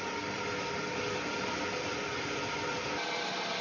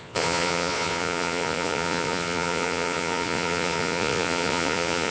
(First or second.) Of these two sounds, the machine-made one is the second